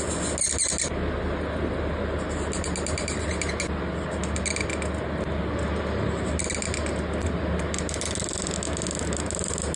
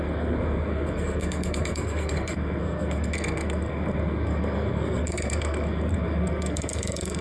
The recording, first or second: first